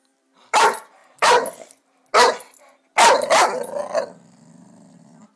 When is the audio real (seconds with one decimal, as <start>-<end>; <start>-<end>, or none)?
2.1-3.1